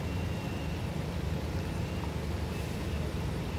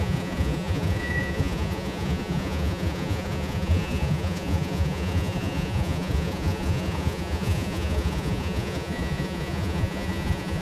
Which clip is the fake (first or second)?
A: second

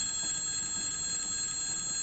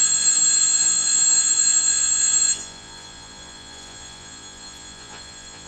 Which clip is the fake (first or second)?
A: second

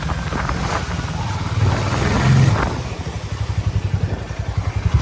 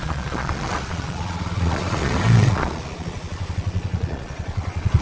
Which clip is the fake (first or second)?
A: second